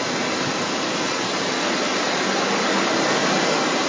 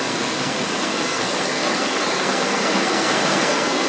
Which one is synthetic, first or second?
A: second